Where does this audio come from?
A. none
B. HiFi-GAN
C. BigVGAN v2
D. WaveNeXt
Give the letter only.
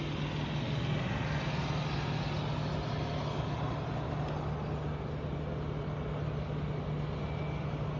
A